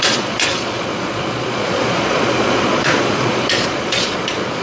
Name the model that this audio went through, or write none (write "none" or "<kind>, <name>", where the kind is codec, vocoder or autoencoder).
vocoder, Vocos